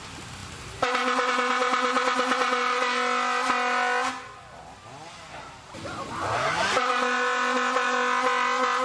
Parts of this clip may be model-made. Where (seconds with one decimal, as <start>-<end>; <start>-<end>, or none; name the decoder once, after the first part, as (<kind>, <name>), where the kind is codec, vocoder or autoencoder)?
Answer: none